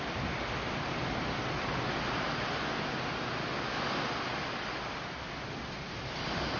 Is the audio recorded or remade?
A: recorded